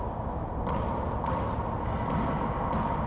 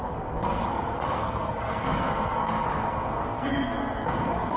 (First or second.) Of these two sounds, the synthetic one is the second